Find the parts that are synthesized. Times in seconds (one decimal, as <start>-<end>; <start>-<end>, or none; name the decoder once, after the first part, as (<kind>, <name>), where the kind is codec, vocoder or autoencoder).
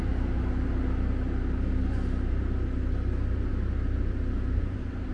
none